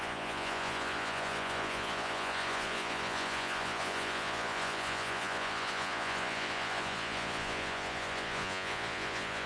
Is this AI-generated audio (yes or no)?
yes